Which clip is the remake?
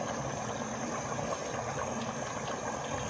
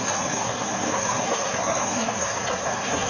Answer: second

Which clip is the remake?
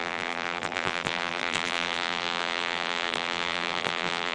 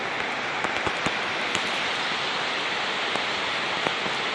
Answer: first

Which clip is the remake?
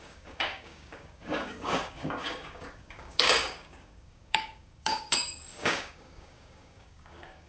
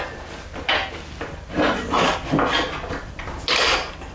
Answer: first